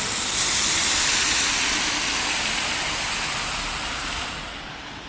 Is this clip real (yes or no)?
yes